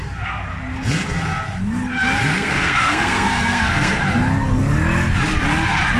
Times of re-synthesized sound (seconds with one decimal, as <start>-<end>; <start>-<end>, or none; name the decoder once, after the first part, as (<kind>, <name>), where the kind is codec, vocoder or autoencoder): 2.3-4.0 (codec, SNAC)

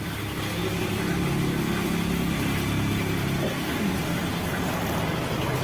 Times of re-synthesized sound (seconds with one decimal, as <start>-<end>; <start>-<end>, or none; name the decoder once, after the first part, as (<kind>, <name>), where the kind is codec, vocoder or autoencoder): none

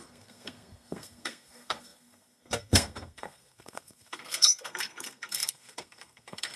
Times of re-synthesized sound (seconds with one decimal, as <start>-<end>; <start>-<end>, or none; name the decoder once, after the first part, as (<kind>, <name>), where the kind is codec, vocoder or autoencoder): 0.0-6.6 (codec, SNAC)

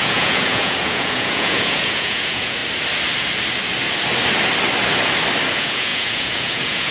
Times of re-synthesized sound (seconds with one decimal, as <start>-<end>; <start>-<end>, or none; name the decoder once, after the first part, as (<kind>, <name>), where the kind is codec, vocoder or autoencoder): 0.0-2.6 (vocoder, Vocos); 5.5-6.9

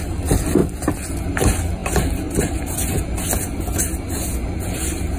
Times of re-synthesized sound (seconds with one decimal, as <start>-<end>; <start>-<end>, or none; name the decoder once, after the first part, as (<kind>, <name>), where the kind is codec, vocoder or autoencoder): none

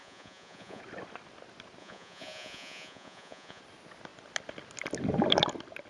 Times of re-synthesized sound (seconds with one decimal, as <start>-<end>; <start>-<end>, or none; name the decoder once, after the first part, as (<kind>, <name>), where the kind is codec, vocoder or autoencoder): 0.0-0.8 (vocoder, Vocos); 1.8-3.6

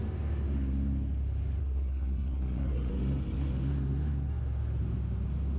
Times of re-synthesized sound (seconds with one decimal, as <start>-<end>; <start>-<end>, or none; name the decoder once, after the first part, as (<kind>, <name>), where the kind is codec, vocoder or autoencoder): 1.6-2.9 (codec, SNAC)